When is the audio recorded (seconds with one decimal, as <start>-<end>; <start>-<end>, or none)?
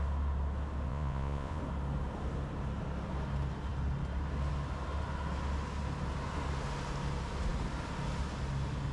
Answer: 0.0-0.9; 1.6-8.9